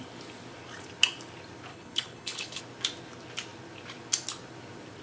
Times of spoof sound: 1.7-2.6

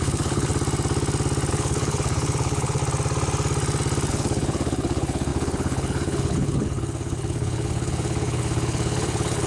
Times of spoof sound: 0.0-0.5; 1.5-2.8; 4.1-9.5

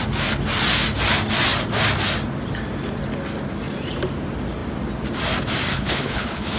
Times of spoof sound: 5.7-6.6

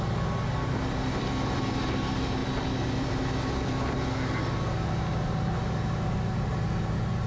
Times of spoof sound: none

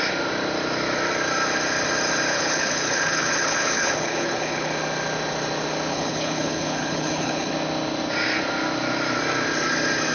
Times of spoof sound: 2.3-4.7; 5.9-7.5

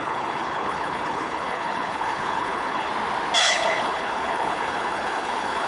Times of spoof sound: 0.0-2.9; 3.4-5.7